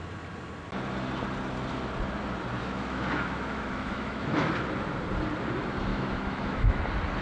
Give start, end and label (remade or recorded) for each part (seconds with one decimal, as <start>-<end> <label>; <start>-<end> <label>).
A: 0.0-2.6 recorded; 2.6-4.5 remade; 4.5-5.9 recorded; 5.9-6.8 remade; 6.8-7.2 recorded